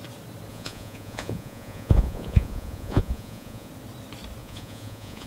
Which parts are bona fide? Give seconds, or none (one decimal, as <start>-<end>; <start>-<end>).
0.0-0.5; 3.7-4.4